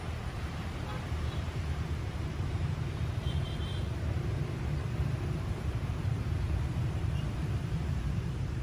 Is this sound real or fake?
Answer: fake